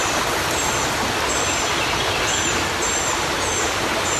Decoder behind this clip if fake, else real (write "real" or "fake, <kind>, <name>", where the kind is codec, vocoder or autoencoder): real